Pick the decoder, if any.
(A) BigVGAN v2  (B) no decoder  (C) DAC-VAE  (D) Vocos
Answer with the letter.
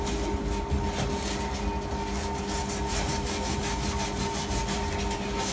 B